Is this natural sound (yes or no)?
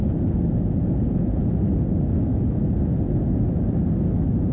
yes